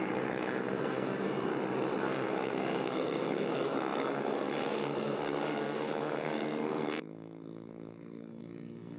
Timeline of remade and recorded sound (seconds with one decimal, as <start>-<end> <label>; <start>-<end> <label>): 0.0-1.5 remade; 1.5-2.0 recorded; 2.0-9.0 remade